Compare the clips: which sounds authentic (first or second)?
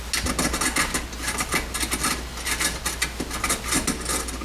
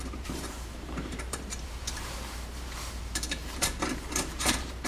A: first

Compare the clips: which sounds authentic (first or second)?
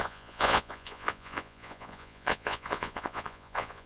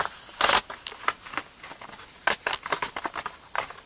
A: second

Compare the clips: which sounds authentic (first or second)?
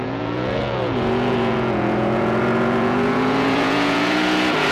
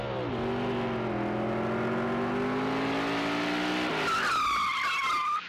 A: second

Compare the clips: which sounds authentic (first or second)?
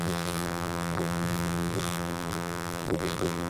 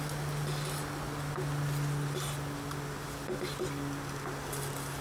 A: second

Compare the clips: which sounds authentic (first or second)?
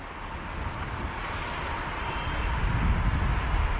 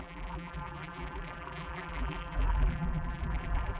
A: first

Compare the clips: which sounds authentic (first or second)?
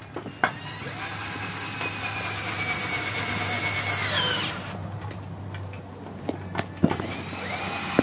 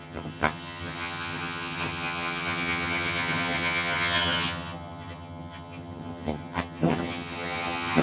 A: first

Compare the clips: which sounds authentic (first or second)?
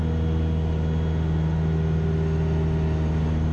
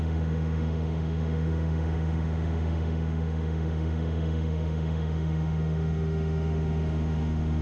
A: first